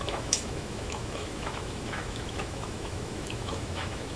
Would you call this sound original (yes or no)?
no